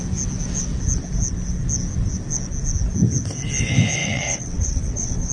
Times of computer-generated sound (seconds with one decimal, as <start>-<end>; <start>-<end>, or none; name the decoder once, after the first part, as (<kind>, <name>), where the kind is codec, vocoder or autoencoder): 4.0-5.3 (vocoder, WaveNeXt)